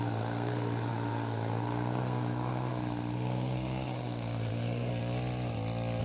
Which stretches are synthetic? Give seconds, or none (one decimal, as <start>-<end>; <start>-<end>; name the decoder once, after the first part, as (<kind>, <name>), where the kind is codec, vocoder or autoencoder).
0.0-4.9 (codec, SNAC)